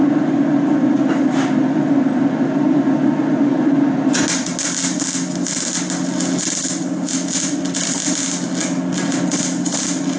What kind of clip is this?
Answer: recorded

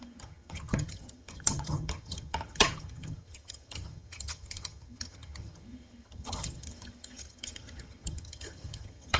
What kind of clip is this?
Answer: remade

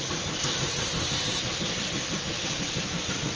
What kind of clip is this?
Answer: recorded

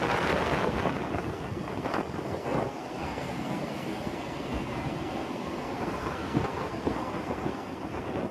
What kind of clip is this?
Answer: remade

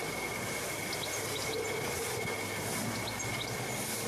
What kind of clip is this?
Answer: recorded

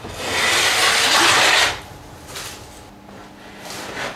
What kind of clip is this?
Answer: recorded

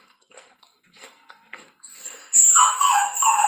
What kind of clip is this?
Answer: remade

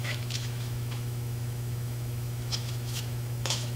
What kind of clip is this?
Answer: remade